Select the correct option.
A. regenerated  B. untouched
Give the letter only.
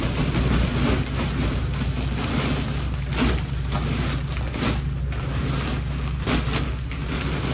B